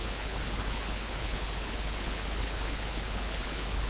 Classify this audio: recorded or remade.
remade